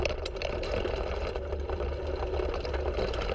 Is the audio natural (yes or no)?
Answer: yes